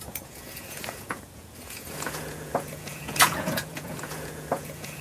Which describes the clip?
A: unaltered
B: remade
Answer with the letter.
B